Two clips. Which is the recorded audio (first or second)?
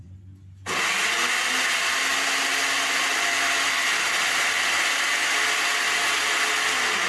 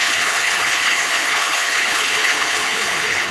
first